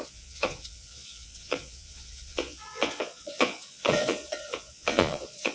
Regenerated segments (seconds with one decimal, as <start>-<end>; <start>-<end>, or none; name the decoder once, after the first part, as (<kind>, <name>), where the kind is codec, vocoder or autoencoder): 0.0-5.5 (vocoder, Vocos)